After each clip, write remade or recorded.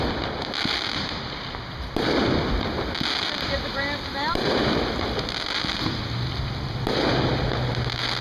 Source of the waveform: recorded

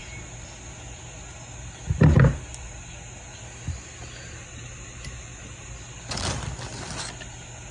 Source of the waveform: recorded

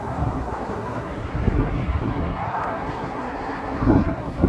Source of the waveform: remade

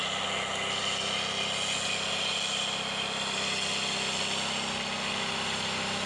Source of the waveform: recorded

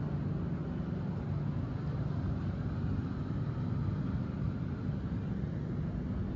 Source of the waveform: recorded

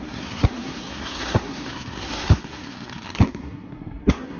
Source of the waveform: remade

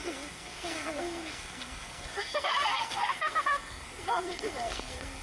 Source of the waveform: remade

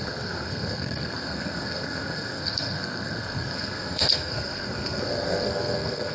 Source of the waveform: remade